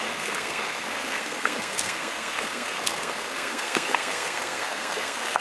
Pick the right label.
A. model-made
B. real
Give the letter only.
A